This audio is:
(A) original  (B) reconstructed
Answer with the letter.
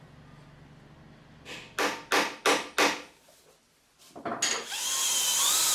A